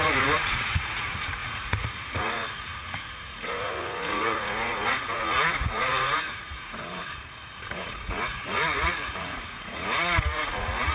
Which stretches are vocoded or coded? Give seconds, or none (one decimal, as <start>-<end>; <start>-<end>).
0.0-10.9